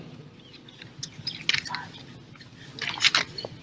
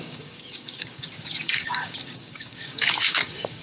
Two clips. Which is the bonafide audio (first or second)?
first